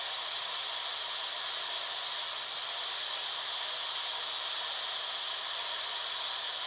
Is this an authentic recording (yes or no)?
yes